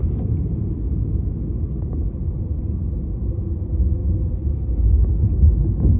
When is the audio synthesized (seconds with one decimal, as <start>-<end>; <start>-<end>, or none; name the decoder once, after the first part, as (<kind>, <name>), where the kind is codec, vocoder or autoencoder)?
none